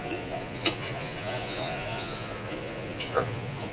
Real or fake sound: fake